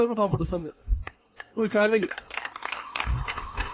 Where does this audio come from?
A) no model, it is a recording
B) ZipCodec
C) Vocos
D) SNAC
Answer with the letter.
D